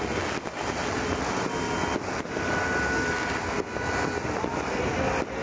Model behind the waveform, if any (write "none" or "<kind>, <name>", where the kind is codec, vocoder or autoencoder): none